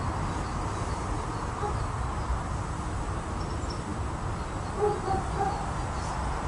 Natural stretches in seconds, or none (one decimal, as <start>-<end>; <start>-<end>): 0.0-6.5